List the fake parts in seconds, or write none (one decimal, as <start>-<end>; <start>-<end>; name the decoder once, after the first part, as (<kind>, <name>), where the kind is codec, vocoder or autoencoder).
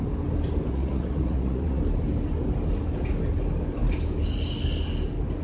0.7-1.8 (vocoder, Vocos)